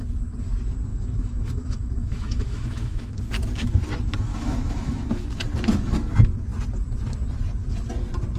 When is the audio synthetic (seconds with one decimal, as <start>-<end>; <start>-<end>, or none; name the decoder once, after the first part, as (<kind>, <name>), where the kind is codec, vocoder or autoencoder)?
0.9-3.2 (autoencoder, DAC-VAE); 4.3-5.4